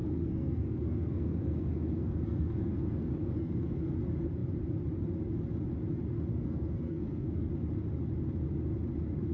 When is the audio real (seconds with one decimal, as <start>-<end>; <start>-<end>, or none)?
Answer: 3.9-6.3; 7.5-9.3